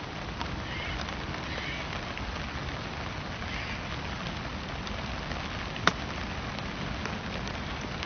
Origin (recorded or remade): recorded